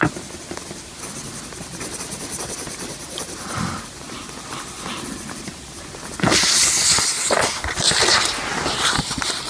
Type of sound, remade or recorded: recorded